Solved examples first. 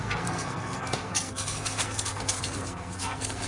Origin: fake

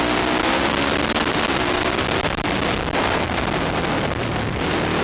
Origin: fake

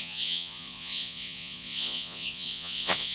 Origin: fake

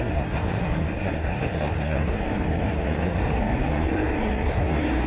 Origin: fake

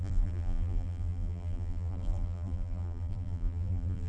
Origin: fake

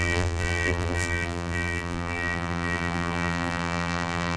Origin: fake